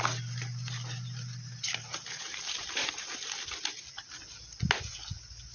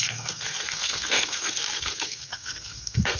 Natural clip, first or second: first